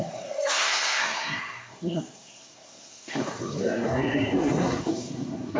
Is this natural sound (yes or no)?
no